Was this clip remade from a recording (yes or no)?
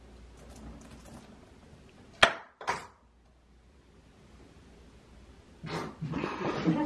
no